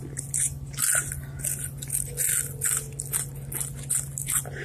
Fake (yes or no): no